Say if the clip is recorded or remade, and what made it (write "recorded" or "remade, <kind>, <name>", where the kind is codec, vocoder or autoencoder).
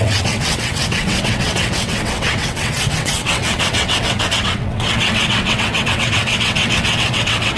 remade, vocoder, WaveNeXt